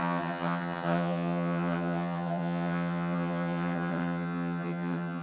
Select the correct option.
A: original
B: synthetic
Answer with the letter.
B